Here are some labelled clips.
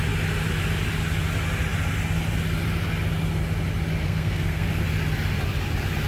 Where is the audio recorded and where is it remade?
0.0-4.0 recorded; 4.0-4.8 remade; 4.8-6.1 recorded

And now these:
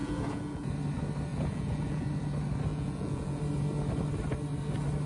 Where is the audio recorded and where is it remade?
0.0-0.7 remade; 0.7-1.3 recorded; 1.3-2.1 remade; 2.1-2.7 recorded; 2.7-3.4 remade; 3.4-5.1 recorded

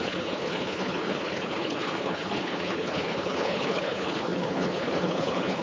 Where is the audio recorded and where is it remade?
0.0-5.6 remade

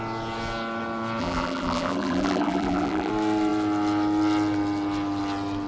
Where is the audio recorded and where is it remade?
0.0-1.2 recorded; 1.2-3.1 remade; 3.1-5.7 recorded

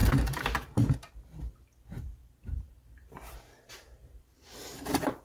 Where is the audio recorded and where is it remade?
0.0-1.1 remade; 1.1-2.2 recorded; 2.2-5.2 remade

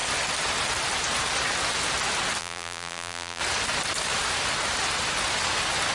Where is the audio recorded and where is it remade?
0.0-2.4 recorded; 2.4-3.4 remade; 3.4-5.9 recorded